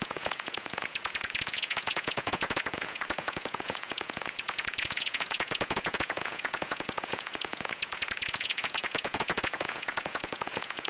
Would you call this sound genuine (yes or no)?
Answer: no